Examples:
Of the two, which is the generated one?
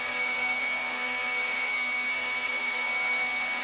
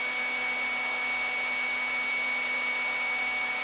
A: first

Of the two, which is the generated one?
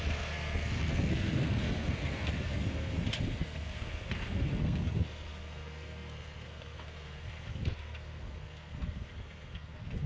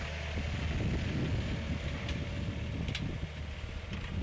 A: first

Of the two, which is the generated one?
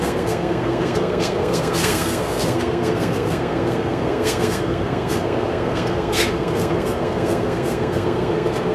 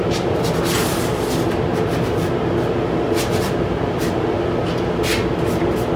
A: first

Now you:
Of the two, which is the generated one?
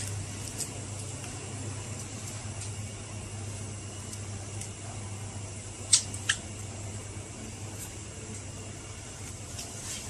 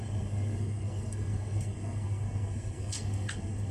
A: second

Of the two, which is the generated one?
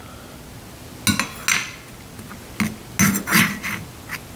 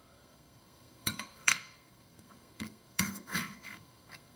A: second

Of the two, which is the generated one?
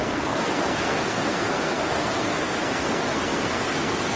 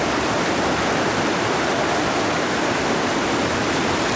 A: first